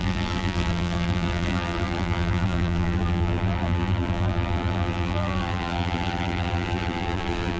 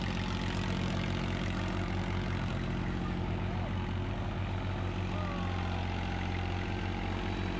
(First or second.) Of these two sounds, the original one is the second